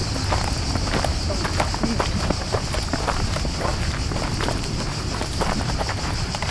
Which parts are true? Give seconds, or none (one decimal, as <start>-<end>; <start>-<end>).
0.0-2.2; 3.7-4.2